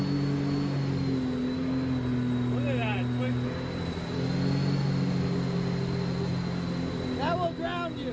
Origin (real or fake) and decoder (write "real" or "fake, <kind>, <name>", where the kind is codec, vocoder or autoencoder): real